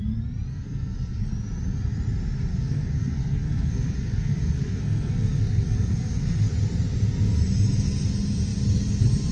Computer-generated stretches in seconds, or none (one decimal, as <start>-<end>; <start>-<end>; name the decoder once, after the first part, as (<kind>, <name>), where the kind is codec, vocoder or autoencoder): 0.5-1.3 (codec, SNAC); 2.5-6.5